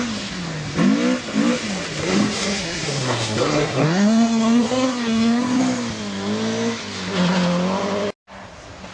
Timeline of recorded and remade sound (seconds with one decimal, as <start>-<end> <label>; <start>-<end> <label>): 0.0-2.0 recorded; 2.0-5.6 remade; 5.6-8.9 recorded